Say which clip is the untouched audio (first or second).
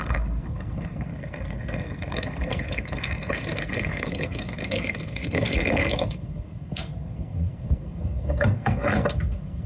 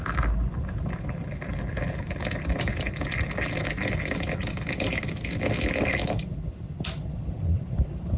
second